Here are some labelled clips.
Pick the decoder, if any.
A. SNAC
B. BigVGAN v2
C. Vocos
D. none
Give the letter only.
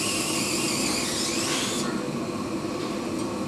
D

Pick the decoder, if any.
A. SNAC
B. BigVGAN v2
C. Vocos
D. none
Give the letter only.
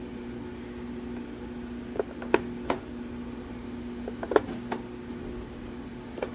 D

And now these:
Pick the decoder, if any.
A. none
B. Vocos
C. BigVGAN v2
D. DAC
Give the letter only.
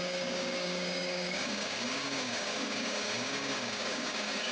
D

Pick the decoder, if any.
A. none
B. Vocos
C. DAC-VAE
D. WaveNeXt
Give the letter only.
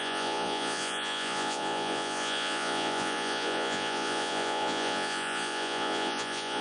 B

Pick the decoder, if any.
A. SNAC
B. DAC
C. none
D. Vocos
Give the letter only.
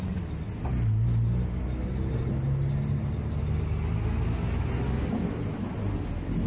C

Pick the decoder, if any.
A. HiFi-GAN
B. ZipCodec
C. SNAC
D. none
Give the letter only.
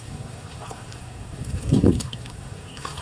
C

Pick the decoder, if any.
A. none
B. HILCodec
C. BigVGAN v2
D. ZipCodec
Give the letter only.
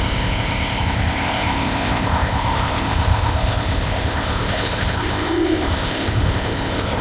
D